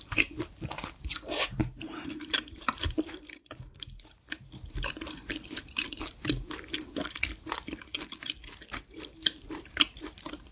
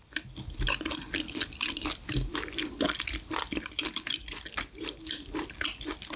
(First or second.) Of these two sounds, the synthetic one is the first